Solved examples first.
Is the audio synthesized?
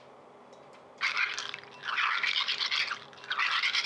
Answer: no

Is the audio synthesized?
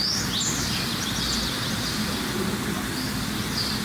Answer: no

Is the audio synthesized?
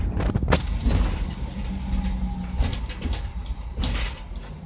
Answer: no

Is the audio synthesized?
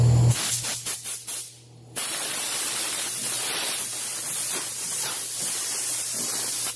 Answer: no